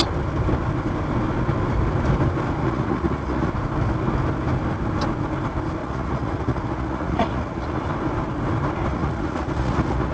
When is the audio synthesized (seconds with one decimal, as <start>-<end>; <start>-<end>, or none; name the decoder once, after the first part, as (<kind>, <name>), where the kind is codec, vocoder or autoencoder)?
2.6-3.5 (vocoder, Vocos); 5.8-7.9; 8.9-10.1